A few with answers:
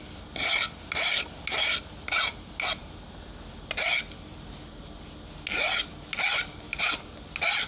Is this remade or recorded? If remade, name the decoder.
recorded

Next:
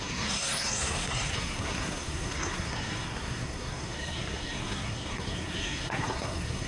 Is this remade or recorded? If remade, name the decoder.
remade, codec, SNAC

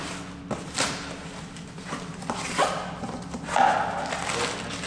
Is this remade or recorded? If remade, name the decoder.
recorded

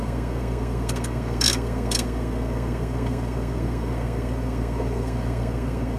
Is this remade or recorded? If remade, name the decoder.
remade, codec, SNAC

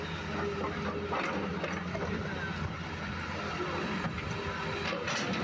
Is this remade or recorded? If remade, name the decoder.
recorded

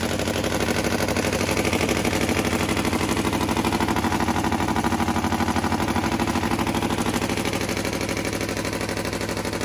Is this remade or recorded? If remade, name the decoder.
recorded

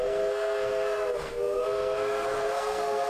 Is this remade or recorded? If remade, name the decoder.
remade, codec, SNAC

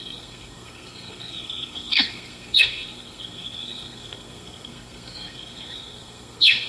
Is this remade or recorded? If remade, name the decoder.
remade, codec, SNAC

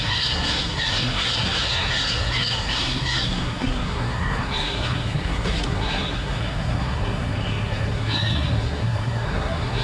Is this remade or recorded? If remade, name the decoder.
remade, codec, SNAC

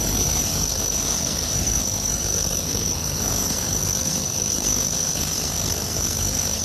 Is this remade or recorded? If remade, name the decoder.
remade, codec, SNAC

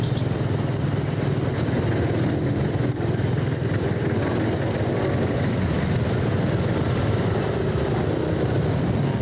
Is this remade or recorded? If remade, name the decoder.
recorded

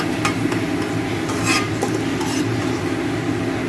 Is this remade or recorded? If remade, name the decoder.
recorded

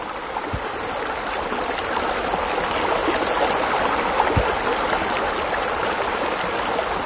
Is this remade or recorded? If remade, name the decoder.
recorded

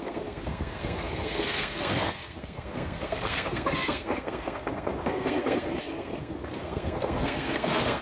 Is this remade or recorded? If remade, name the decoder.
remade, codec, SNAC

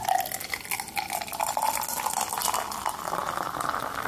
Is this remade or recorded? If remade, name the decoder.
recorded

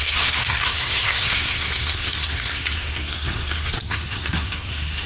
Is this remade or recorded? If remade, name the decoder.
remade, codec, SNAC